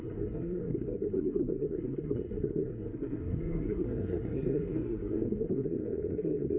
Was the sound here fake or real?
fake